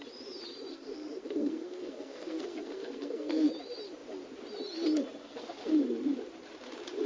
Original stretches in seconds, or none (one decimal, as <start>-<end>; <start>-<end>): 0.0-0.7; 3.5-5.2; 5.8-7.1